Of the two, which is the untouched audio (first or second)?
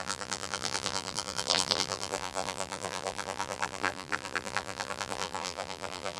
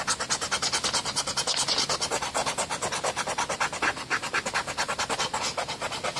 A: second